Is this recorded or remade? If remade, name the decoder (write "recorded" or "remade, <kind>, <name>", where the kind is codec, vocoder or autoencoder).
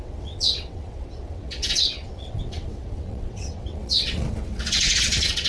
remade, vocoder, WaveNeXt